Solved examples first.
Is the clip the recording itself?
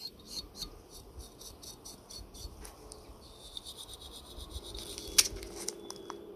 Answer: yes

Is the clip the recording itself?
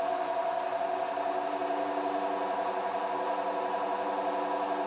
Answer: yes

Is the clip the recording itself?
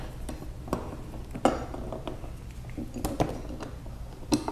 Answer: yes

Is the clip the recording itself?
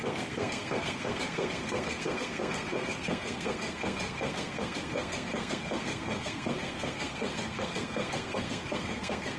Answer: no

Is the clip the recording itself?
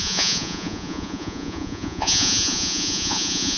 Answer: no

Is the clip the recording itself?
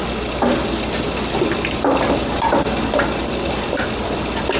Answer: yes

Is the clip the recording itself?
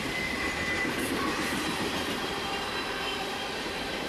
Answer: no